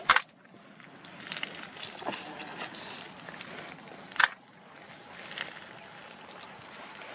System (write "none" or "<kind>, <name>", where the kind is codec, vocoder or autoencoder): none